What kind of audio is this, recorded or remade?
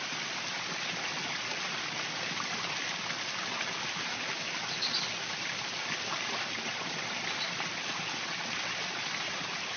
recorded